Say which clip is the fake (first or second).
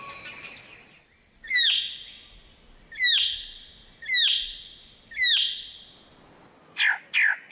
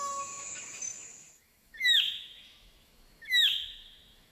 second